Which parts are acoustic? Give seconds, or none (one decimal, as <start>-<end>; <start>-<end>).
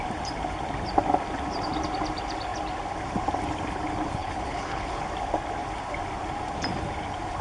0.0-4.2; 5.0-7.4